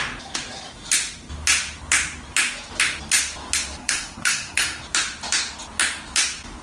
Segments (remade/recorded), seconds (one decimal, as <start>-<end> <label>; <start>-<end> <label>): 0.0-3.8 recorded; 3.8-4.8 remade; 4.8-6.6 recorded